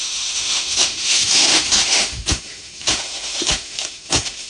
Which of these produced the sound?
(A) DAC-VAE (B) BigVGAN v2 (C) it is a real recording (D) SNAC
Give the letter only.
A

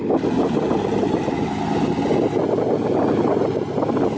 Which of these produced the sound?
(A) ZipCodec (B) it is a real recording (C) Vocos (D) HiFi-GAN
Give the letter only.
B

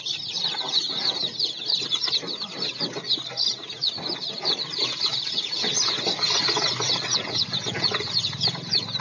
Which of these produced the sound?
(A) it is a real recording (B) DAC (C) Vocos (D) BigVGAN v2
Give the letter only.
A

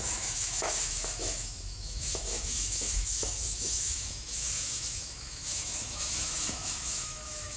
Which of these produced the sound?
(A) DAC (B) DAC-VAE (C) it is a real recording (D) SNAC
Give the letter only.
B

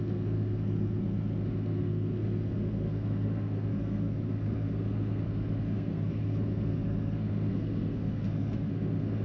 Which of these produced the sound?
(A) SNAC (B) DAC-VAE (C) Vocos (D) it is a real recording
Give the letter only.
A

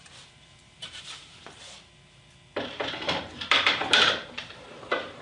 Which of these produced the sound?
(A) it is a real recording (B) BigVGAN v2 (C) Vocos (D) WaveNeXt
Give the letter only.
B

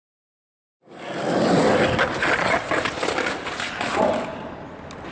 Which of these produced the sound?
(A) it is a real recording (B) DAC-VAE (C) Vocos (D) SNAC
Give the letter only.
A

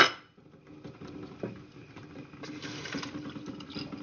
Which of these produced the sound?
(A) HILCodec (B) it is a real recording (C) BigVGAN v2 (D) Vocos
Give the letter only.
B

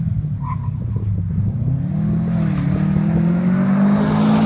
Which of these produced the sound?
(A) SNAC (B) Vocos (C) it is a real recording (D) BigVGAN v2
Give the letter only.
C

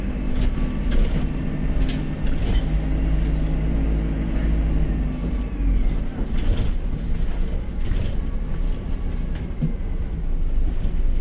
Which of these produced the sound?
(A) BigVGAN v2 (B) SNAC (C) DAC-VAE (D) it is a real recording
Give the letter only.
D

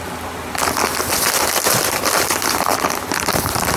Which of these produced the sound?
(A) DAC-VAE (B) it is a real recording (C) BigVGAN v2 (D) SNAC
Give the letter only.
C